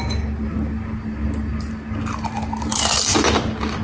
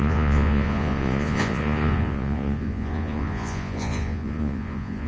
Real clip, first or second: first